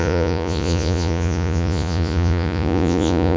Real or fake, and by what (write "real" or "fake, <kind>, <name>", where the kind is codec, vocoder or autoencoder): fake, vocoder, Vocos